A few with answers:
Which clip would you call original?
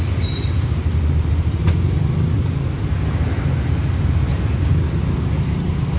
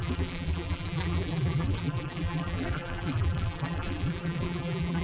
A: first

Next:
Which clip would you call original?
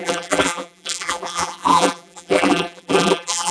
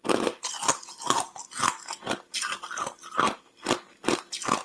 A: second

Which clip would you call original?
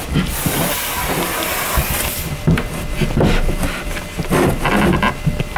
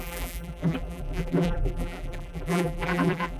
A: first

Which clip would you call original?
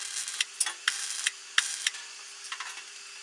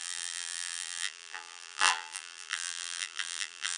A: first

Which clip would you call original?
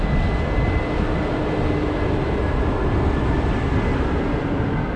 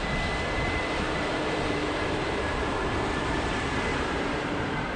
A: first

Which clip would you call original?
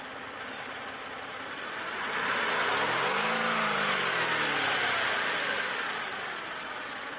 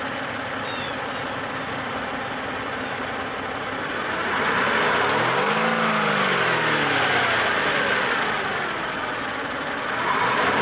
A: second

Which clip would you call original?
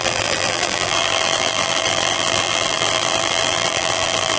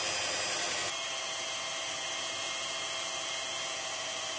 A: second